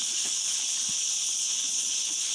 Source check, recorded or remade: remade